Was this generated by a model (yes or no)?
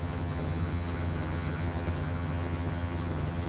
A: yes